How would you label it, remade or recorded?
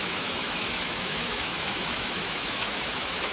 remade